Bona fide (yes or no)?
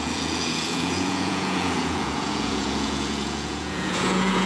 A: no